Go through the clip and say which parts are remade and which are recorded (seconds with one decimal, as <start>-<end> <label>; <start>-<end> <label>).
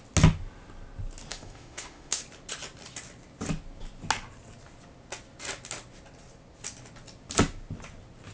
0.0-1.3 recorded; 1.3-2.2 remade; 2.2-8.3 recorded